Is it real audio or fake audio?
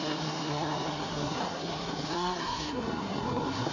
fake